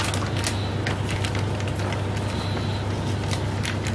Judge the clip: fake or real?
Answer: real